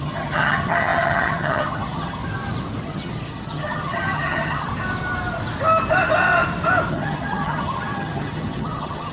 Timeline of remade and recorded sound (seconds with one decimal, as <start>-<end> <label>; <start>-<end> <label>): 0.0-2.2 remade; 2.2-2.8 recorded; 2.8-4.7 remade; 4.7-6.9 recorded; 6.9-9.1 remade